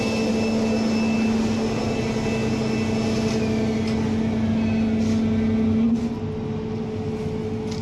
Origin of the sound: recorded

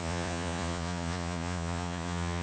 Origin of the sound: remade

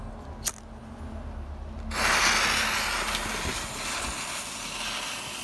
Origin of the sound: recorded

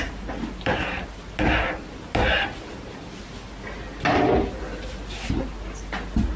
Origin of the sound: recorded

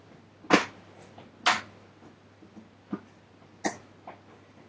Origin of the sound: recorded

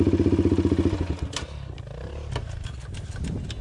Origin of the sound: recorded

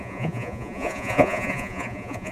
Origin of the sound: remade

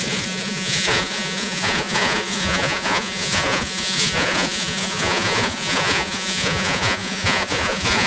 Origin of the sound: remade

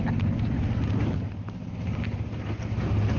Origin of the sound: recorded